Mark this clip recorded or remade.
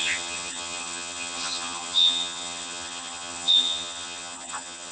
remade